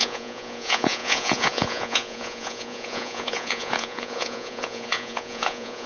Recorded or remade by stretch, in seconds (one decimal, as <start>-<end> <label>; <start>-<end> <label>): 0.0-5.9 remade